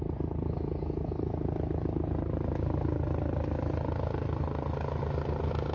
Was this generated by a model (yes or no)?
no